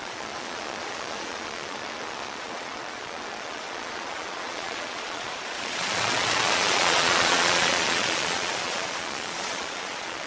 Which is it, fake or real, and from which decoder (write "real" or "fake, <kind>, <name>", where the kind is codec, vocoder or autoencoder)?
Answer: fake, vocoder, Vocos